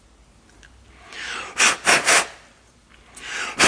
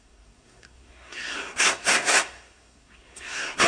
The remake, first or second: second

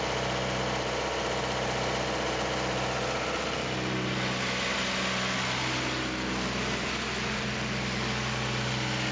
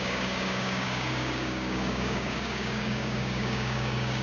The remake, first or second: second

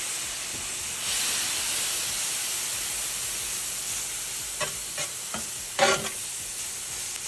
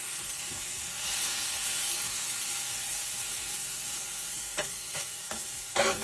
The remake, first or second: second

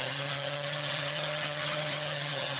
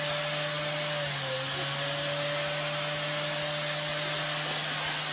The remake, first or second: first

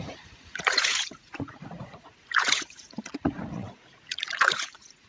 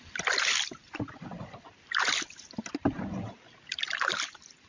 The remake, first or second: first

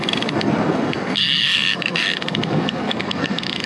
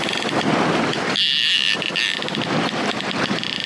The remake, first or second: first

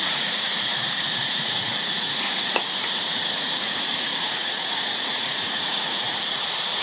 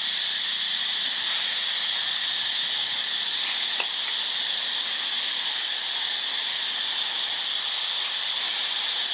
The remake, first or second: first